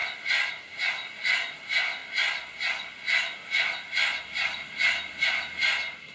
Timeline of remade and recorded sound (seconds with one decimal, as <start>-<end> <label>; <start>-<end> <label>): 0.0-0.5 recorded; 0.5-2.0 remade; 2.0-4.2 recorded; 4.2-6.1 remade